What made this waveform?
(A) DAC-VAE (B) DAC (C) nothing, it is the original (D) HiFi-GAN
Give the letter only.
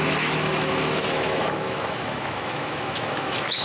A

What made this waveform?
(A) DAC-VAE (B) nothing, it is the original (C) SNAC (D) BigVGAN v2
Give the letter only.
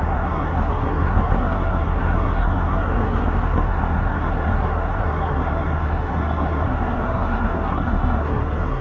C